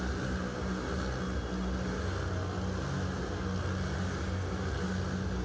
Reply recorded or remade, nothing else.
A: recorded